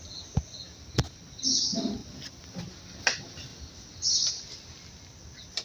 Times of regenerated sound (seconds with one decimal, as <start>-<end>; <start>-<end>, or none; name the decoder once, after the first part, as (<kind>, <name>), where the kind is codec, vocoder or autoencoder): none